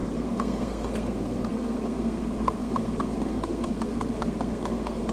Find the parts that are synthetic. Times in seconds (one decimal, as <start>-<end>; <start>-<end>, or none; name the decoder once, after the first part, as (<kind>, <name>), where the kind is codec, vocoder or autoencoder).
0.0-5.1 (codec, SNAC)